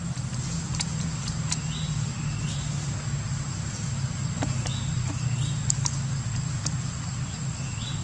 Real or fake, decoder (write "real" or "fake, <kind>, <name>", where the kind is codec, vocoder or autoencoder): real